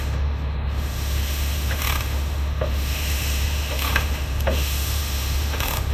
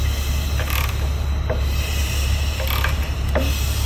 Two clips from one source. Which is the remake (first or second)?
first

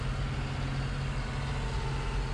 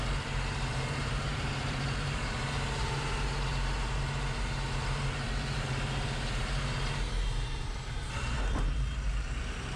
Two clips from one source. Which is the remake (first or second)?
second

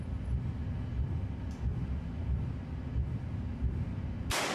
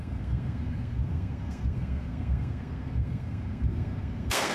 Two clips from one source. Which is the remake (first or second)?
second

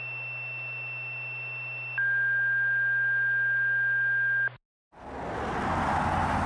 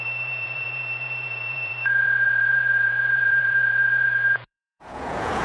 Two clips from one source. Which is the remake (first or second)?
second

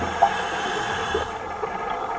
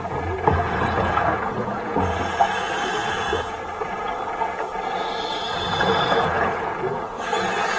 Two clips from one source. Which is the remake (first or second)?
second